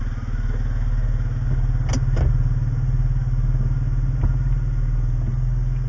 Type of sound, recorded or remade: recorded